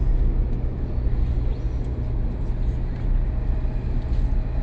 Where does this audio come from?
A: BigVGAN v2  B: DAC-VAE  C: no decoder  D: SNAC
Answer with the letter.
C